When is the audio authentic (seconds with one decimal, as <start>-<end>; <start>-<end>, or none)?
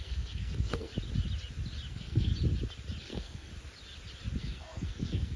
0.9-1.9; 2.3-3.0; 3.5-4.4